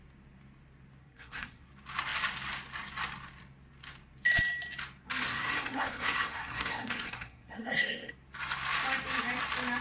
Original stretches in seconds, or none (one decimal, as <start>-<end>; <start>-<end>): 0.0-1.0; 1.7-5.3; 8.1-9.8